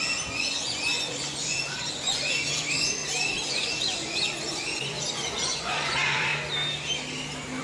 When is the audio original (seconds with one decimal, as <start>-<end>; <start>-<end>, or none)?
3.0-3.5; 6.3-7.6